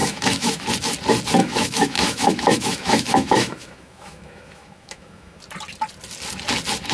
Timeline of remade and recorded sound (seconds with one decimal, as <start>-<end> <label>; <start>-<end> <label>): 0.0-0.7 remade; 0.7-1.4 recorded; 1.4-5.4 remade; 5.4-6.9 recorded